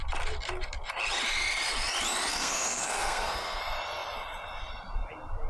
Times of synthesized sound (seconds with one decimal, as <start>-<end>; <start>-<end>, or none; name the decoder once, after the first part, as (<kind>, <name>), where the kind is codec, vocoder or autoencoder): 2.3-3.6 (codec, SNAC)